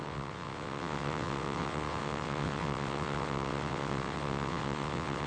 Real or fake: fake